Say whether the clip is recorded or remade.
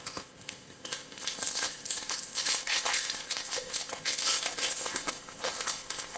remade